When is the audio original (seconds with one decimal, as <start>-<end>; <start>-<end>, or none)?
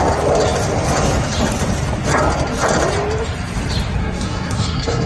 0.0-4.0